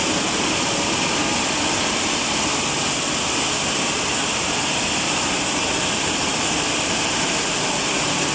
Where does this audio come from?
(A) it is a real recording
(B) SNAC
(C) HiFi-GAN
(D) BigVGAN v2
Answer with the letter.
A